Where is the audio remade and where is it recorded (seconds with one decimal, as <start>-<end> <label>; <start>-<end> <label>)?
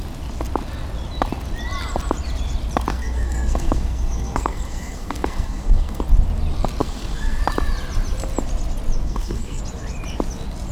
0.0-2.9 recorded; 2.9-6.0 remade; 6.0-6.8 recorded; 6.8-7.4 remade; 7.4-9.0 recorded; 9.0-9.6 remade; 9.6-10.7 recorded